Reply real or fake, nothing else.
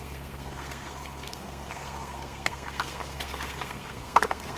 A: fake